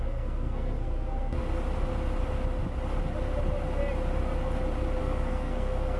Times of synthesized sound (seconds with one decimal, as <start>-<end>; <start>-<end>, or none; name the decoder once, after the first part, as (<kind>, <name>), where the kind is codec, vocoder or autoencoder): 0.0-1.4 (codec, SNAC); 5.0-6.0